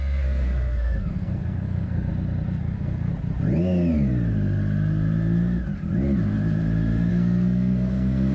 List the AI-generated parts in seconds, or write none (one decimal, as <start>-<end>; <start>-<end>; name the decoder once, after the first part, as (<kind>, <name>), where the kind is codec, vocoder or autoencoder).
0.0-2.1 (codec, SNAC); 2.6-3.1; 7.1-8.3